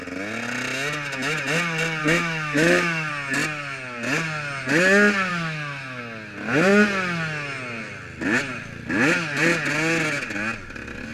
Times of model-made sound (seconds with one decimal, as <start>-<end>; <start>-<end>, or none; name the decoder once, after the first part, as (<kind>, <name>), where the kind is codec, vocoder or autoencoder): 2.0-3.1 (autoencoder, DAC-VAE); 5.3-6.0